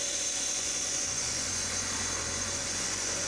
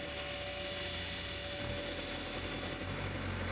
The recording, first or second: second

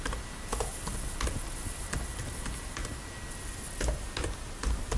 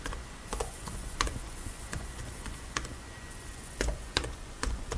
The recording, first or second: first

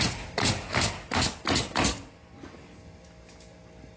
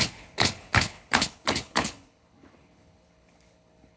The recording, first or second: first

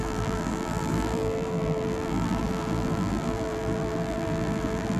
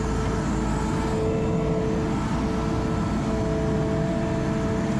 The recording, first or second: second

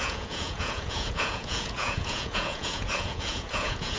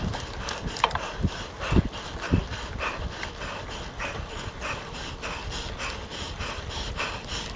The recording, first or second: second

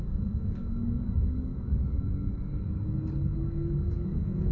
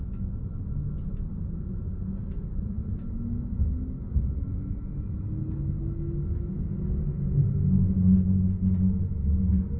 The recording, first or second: second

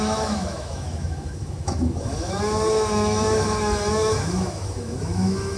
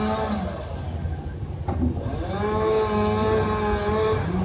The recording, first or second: second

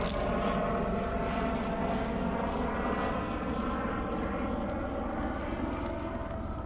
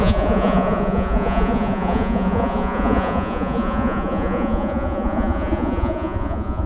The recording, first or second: first